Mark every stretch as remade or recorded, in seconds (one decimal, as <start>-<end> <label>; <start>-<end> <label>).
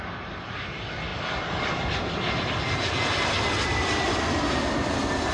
0.0-5.3 recorded